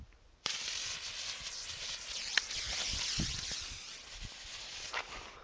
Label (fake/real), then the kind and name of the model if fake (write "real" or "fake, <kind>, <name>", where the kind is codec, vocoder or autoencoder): real